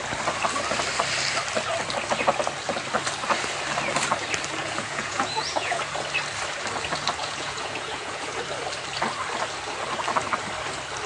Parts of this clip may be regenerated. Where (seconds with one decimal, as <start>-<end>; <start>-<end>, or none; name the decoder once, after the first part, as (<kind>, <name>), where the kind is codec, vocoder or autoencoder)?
4.6-5.8 (vocoder, Vocos); 7.2-8.4